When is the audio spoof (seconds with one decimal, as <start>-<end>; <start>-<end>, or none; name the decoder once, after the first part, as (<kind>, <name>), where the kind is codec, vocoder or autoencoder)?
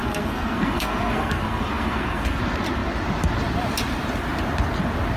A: 0.0-2.4 (codec, SNAC)